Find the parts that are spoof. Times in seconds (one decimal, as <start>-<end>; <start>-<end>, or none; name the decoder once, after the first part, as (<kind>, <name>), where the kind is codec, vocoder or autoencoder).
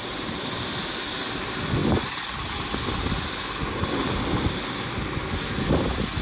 none